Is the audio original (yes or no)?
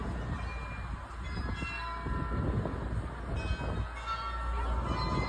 yes